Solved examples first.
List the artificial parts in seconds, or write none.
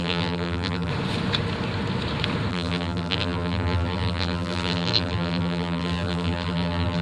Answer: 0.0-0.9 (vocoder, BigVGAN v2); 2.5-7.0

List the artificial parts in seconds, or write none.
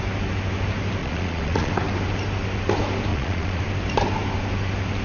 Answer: 1.0-1.7 (vocoder, Vocos); 3.1-3.6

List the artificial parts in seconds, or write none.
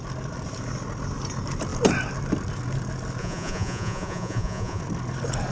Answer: 3.2-4.8 (vocoder, Vocos)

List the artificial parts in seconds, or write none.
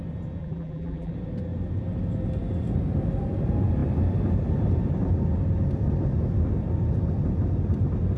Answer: 0.4-1.1 (vocoder, BigVGAN v2)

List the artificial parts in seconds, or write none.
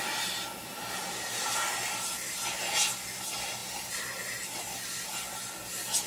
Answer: 3.6-4.6 (vocoder, BigVGAN v2)